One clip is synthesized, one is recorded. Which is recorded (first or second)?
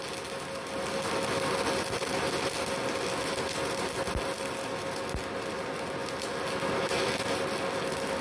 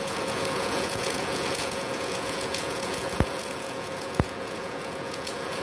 first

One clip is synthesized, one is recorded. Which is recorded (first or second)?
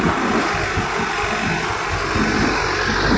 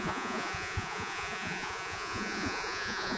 first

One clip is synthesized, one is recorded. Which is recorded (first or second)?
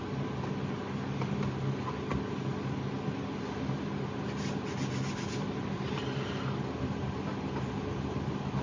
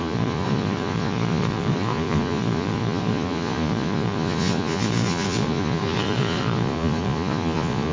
first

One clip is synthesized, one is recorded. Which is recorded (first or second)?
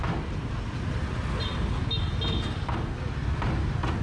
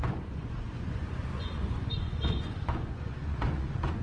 first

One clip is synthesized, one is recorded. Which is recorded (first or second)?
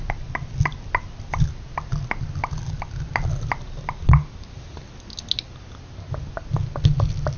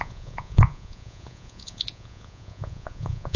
first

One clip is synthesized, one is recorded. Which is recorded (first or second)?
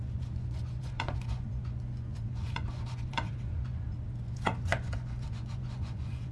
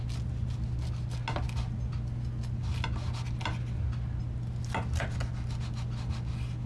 second